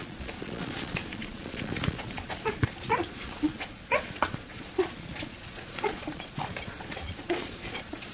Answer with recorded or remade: remade